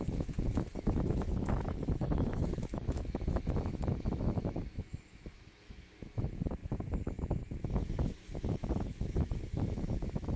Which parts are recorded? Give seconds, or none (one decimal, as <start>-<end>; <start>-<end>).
none